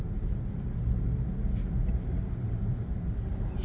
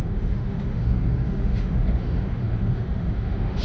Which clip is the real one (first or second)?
first